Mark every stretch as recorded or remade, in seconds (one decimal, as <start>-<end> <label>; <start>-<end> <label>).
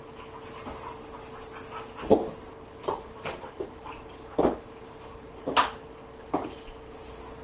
0.0-2.8 recorded; 2.8-5.6 remade; 5.6-7.4 recorded